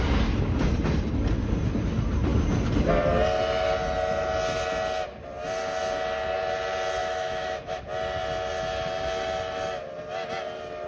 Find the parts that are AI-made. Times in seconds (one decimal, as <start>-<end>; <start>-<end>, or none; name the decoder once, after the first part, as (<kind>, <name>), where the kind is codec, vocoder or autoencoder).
7.0-7.8 (autoencoder, DAC-VAE)